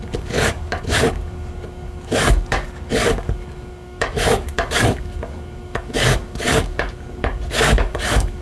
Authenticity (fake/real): fake